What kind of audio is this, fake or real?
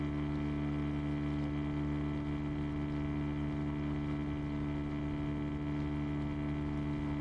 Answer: real